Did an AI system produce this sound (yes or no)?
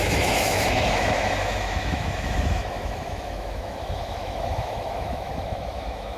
yes